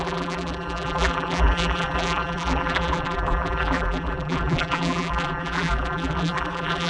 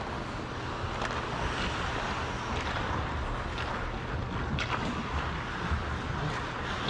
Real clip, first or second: second